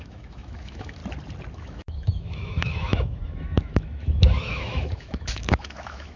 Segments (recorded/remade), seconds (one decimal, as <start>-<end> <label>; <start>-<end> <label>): 0.0-1.0 remade; 1.0-1.5 recorded; 1.5-6.2 remade